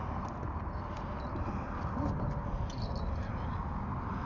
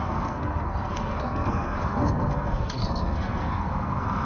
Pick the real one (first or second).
first